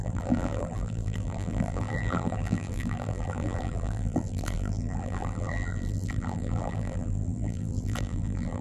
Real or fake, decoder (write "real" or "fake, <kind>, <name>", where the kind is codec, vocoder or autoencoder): fake, vocoder, BigVGAN v2